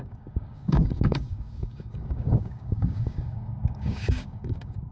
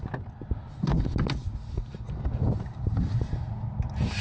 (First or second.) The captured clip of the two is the second